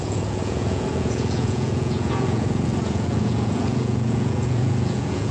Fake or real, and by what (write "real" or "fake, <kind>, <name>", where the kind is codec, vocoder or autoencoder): fake, vocoder, Vocos